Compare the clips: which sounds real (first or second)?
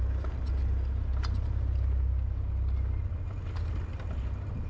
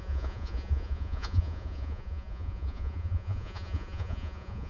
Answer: first